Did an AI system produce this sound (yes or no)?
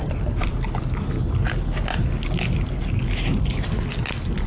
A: no